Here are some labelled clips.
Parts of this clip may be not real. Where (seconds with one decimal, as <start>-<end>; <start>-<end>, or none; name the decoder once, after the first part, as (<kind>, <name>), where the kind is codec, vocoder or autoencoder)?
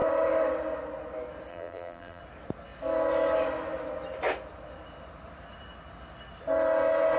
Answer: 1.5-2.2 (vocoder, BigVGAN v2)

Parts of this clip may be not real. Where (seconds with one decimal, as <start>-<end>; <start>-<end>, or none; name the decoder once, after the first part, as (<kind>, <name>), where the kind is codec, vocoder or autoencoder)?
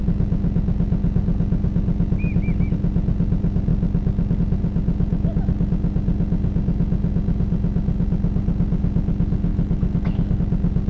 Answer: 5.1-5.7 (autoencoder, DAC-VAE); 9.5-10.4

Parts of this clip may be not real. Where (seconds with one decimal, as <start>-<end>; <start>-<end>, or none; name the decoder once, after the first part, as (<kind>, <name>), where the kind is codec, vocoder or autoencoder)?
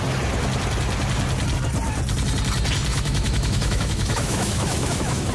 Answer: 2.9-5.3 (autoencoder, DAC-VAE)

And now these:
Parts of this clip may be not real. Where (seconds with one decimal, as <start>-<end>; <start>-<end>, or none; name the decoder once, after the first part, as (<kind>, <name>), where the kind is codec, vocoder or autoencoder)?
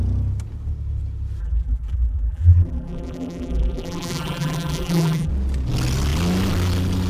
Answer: 1.4-5.3 (vocoder, BigVGAN v2)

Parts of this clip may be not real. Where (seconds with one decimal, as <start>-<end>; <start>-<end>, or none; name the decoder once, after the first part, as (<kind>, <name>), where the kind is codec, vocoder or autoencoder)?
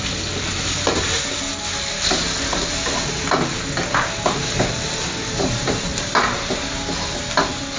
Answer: none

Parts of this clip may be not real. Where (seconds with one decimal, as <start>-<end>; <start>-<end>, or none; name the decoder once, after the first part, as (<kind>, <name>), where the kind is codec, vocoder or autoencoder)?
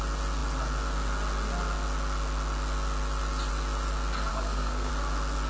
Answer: 4.3-4.9 (codec, SNAC)